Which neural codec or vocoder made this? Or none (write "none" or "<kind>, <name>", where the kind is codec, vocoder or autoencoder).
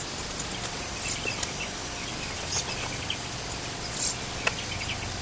none